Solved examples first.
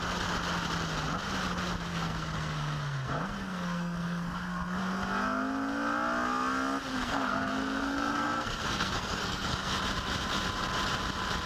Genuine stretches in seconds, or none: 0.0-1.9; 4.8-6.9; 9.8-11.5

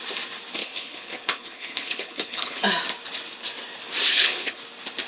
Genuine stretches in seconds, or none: 0.0-0.6; 2.6-4.1; 4.6-5.1